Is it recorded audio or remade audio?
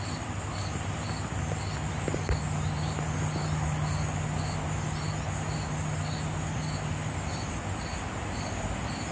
recorded